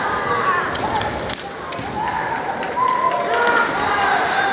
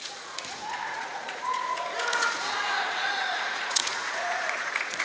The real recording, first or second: first